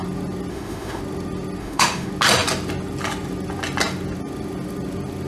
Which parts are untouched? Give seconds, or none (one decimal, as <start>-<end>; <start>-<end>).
0.0-0.5; 1.0-1.6; 2.1-5.3